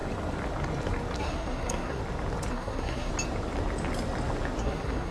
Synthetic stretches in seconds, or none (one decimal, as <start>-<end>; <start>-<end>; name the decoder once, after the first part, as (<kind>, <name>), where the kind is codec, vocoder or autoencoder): 1.2-2.0 (codec, SNAC); 2.5-3.1; 4.6-5.1